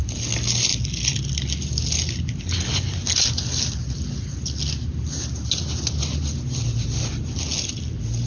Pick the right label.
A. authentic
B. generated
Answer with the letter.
A